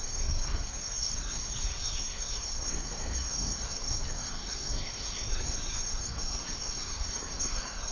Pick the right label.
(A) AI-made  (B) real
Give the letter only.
A